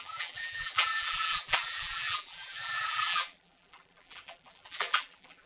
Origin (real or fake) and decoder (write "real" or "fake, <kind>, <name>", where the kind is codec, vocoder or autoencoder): fake, vocoder, BigVGAN v2